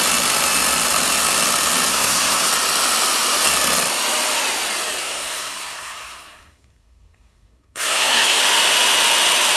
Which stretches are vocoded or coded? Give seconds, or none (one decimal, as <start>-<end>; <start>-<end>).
1.9-2.5; 5.0-8.4